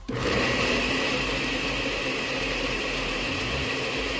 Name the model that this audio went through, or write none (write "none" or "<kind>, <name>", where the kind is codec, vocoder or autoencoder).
vocoder, BigVGAN v2